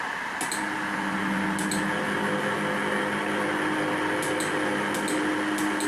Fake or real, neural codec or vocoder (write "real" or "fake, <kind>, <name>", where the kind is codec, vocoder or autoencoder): real